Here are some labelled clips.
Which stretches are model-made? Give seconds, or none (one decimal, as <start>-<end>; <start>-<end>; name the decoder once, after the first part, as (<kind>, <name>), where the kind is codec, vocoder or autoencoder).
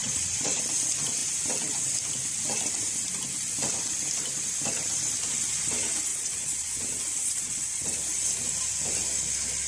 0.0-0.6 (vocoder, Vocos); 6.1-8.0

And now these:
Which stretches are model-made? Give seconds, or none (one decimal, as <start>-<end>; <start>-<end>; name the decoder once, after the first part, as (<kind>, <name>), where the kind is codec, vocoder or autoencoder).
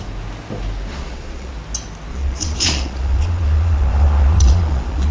0.9-1.5 (vocoder, Vocos); 2.1-5.1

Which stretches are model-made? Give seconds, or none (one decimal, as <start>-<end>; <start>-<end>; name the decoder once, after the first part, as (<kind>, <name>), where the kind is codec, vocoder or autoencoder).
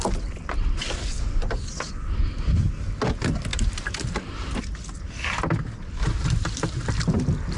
none